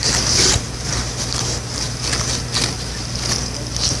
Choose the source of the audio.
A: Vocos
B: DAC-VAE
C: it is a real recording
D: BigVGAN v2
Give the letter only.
D